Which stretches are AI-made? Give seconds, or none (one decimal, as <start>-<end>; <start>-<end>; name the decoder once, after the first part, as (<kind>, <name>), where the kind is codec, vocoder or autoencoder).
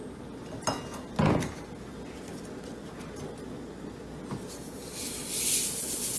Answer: none